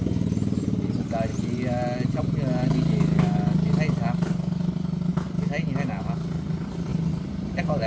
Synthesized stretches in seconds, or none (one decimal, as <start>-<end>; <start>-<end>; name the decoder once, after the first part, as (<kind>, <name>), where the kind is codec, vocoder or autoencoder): none